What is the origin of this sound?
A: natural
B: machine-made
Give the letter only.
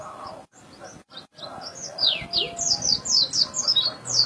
A